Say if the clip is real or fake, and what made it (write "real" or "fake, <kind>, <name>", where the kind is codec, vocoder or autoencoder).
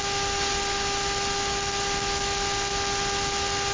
real